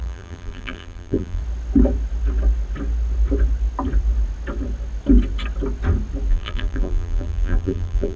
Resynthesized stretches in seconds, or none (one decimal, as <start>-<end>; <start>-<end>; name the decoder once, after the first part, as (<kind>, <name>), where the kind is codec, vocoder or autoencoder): 0.0-1.4 (vocoder, BigVGAN v2); 6.3-8.2